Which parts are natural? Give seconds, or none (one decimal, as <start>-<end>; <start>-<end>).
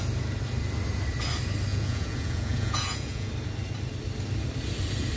0.0-1.7; 3.3-5.2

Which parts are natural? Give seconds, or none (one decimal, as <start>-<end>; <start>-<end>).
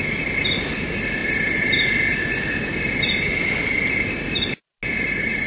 0.0-5.5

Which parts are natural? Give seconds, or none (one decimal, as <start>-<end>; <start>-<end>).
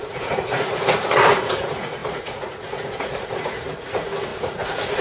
none